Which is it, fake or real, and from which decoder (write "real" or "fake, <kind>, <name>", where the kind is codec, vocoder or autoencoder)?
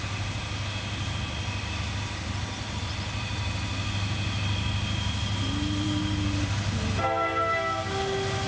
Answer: real